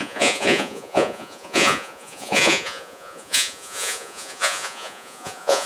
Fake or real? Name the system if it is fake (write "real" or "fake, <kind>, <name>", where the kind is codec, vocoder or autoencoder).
fake, vocoder, Vocos